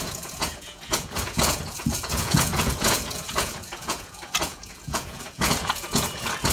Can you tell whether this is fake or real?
fake